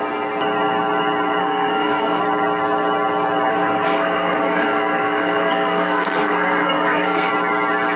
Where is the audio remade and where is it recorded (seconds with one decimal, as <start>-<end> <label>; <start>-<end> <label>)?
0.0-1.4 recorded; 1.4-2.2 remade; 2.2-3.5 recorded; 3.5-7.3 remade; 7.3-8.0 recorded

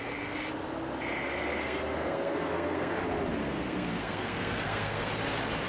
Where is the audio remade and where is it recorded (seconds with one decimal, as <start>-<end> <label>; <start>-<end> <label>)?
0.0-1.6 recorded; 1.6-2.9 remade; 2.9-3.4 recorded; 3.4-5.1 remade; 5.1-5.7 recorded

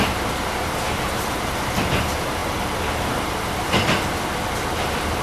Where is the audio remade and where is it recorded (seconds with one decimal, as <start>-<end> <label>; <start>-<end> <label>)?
0.0-5.2 recorded